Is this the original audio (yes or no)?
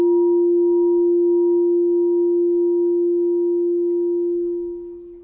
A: yes